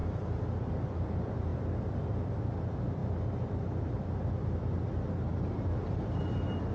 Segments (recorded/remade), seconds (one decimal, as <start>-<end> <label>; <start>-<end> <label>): 0.0-0.6 recorded; 0.6-3.0 remade; 3.0-3.5 recorded; 3.5-5.3 remade; 5.3-6.7 recorded